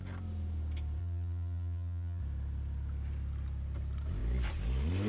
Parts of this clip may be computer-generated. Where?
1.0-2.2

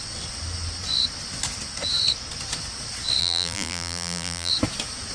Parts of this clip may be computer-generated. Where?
3.2-4.5

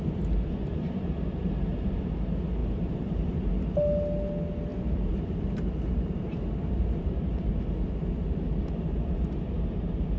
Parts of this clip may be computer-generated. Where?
0.6-2.1; 2.6-3.5; 4.7-7.5

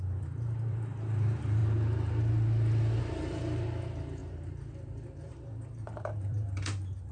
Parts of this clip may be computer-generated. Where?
0.0-1.6; 3.0-7.1

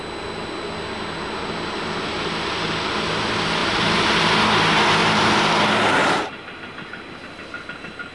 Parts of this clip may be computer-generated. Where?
3.6-4.2; 5.0-6.3

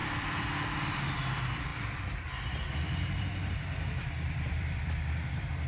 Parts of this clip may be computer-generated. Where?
0.0-5.7

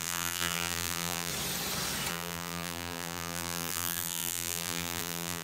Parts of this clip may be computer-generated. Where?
0.0-1.3; 2.1-5.4

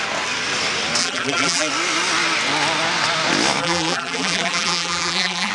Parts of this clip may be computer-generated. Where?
1.0-1.7; 3.6-5.5